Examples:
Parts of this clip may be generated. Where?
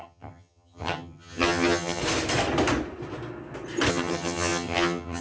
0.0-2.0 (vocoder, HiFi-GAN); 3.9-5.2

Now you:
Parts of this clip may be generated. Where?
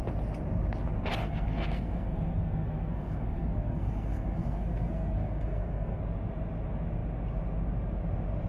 1.2-6.0 (codec, SNAC)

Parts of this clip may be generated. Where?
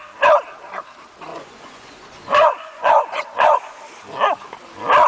1.3-3.8 (vocoder, Vocos)